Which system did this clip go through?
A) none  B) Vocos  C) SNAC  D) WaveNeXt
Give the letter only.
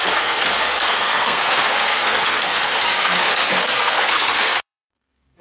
C